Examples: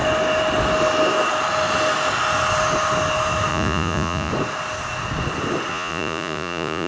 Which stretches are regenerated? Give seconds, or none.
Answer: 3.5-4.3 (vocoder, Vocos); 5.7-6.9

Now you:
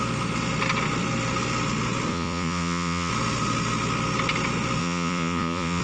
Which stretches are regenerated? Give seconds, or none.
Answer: 2.1-3.1 (vocoder, Vocos); 4.8-5.8

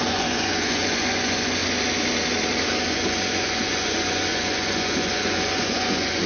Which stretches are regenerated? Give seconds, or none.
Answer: 0.0-1.6 (vocoder, Vocos); 2.9-6.3